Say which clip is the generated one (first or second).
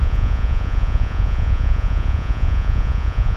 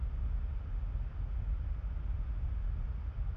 first